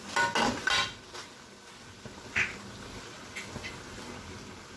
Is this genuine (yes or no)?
yes